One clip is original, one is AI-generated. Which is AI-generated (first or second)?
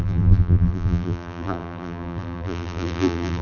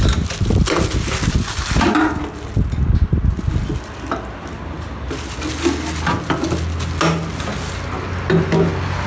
first